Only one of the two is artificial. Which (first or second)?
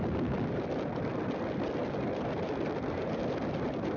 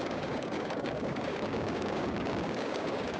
second